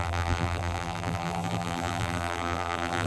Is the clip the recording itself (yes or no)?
no